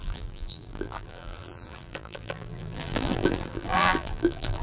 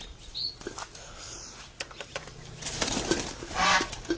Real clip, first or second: second